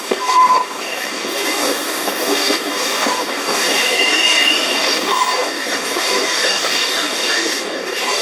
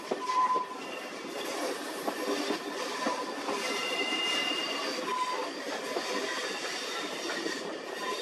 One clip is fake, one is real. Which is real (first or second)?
second